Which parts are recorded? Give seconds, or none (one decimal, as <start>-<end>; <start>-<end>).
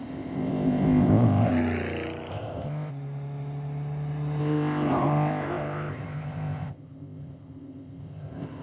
1.5-2.3; 2.9-4.4